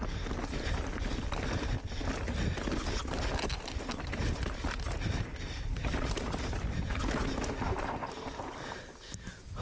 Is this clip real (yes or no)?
yes